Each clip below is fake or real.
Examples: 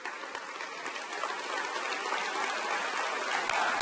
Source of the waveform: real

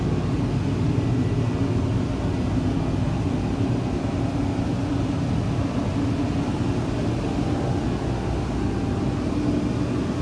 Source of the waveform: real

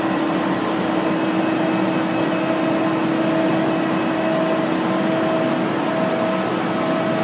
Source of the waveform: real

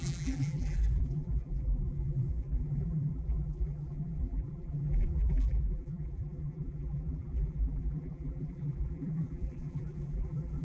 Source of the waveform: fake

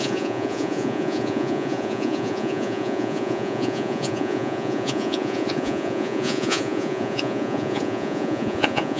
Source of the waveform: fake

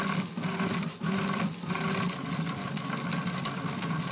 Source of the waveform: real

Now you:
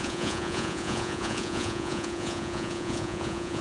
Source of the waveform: fake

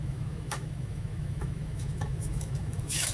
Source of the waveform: fake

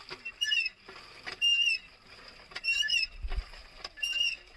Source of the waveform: real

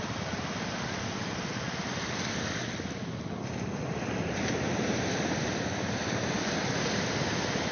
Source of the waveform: real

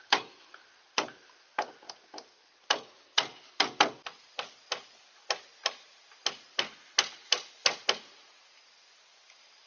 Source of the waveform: real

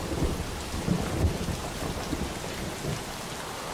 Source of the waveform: real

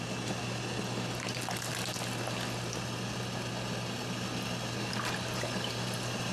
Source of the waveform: real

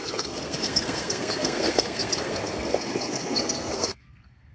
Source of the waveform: fake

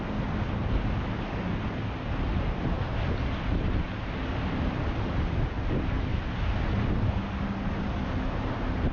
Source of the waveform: real